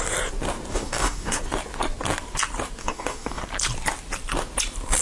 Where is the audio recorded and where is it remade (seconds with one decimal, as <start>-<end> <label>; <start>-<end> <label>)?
0.0-0.7 recorded; 0.7-1.4 remade; 1.4-2.8 recorded; 2.8-3.4 remade; 3.4-5.0 recorded

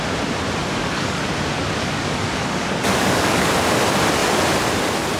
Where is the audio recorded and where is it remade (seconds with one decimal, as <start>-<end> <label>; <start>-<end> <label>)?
0.0-0.6 recorded; 0.6-1.2 remade; 1.2-1.8 recorded; 1.8-3.5 remade; 3.5-5.2 recorded